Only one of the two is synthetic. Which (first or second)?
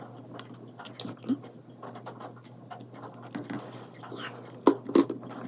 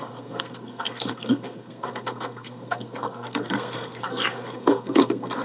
second